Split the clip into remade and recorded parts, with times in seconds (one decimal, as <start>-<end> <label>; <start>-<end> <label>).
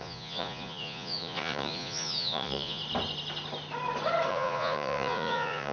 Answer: 0.0-2.8 remade; 2.8-4.3 recorded; 4.3-5.7 remade